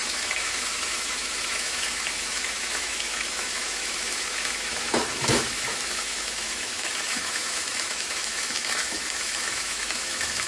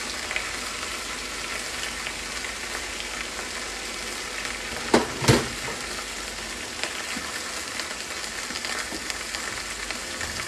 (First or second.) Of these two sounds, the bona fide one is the second